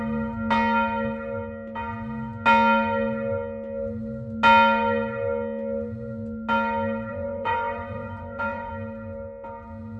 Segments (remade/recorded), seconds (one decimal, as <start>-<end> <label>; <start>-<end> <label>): 0.0-7.1 recorded; 7.1-8.7 remade; 8.7-10.0 recorded